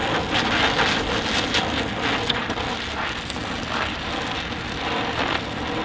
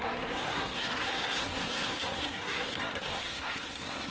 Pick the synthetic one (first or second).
second